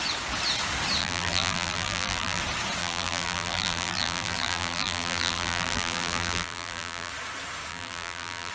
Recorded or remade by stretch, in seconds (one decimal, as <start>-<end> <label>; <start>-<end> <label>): 0.0-1.0 recorded; 1.0-2.4 remade; 2.4-2.8 recorded; 2.8-7.1 remade; 7.1-7.7 recorded; 7.7-8.5 remade